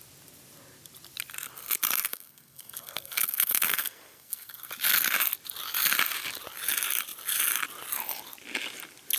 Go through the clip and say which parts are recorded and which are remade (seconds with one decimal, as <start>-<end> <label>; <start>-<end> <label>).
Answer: 0.0-2.1 recorded; 2.1-4.7 remade; 4.7-9.2 recorded